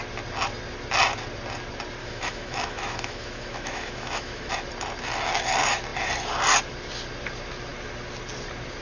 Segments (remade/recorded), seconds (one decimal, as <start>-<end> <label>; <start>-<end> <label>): 0.0-2.0 recorded; 2.0-4.5 remade; 4.5-8.8 recorded